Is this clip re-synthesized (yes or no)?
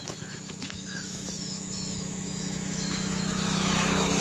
yes